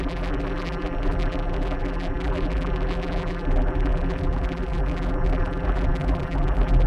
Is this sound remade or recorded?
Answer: remade